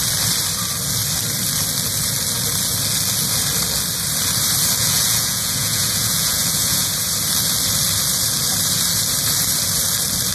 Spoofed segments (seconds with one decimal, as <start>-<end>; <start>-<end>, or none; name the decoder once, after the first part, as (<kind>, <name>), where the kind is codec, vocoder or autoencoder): 4.8-6.9 (vocoder, Vocos)